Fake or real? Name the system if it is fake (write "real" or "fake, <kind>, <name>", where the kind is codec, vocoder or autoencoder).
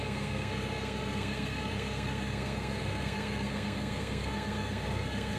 fake, codec, SNAC